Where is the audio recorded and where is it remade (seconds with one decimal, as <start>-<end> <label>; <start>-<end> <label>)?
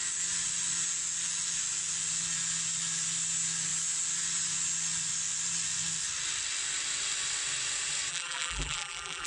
0.0-8.1 recorded; 8.1-9.3 remade